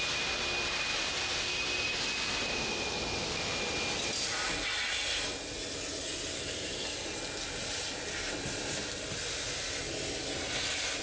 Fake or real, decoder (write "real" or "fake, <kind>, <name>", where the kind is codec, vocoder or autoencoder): real